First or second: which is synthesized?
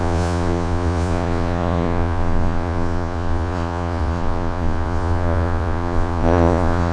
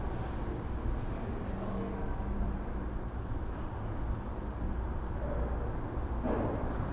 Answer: first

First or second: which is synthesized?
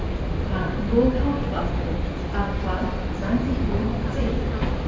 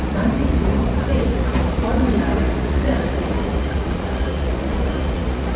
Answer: second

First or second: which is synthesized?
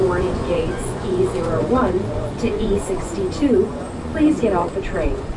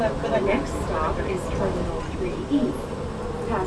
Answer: first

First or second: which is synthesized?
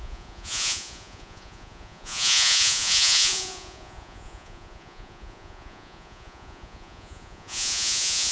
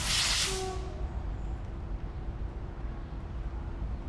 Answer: first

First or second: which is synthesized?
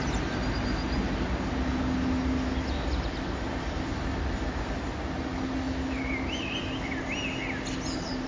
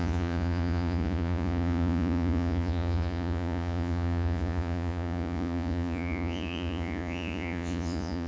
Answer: second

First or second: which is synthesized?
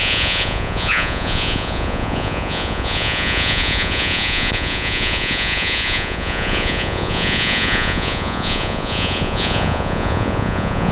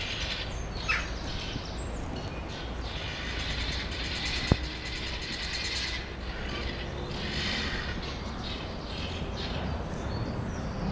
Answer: first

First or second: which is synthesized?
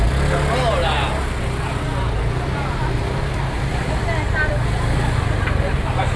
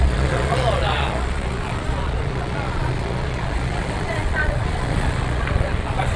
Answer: second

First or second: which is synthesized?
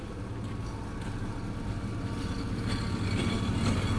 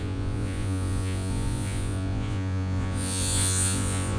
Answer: second